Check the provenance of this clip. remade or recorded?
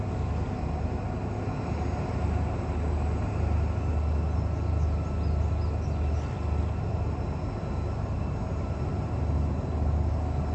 recorded